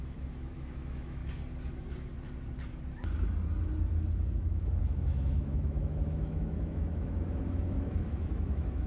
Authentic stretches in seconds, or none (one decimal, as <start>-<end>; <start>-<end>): 1.2-4.2